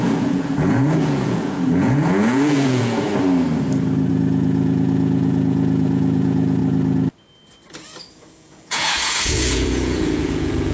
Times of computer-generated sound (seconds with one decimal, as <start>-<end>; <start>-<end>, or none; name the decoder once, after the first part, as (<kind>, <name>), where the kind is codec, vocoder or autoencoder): 0.0-3.1 (vocoder, Vocos); 4.1-6.6; 8.1-10.7